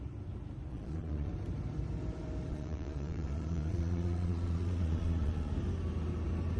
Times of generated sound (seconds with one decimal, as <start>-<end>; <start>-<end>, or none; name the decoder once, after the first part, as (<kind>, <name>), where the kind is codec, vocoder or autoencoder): 0.7-1.3 (vocoder, Vocos); 2.5-5.5